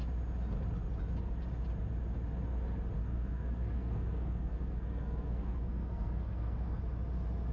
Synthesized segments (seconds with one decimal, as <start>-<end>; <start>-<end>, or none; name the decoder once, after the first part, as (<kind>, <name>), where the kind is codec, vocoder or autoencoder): 3.0-6.8 (codec, SNAC)